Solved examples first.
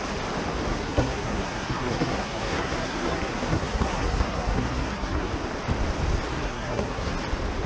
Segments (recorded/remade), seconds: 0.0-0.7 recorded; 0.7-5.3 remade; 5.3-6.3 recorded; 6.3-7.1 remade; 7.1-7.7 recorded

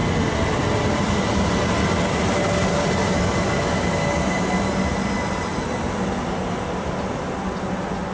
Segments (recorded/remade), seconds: 0.0-8.1 recorded